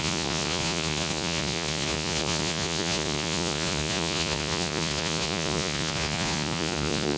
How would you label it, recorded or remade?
remade